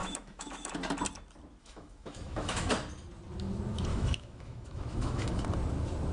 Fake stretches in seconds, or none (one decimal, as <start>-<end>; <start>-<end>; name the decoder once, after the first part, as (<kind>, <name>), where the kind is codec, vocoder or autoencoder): 0.0-0.7 (autoencoder, DAC-VAE); 1.6-2.7; 3.9-5.4